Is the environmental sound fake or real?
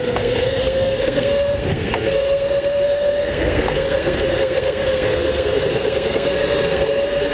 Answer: fake